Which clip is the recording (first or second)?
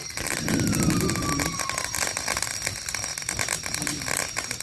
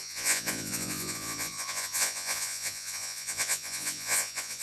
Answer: first